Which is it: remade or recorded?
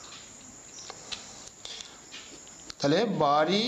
recorded